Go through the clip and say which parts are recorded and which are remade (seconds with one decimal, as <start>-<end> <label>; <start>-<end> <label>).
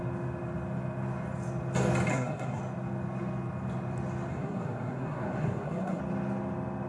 0.0-2.1 recorded; 2.1-2.6 remade; 2.6-4.3 recorded; 4.3-6.0 remade; 6.0-6.9 recorded